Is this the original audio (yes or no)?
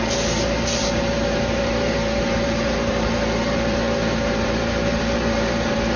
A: no